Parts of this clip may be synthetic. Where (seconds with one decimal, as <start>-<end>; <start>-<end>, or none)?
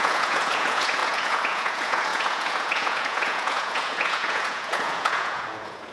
0.0-5.9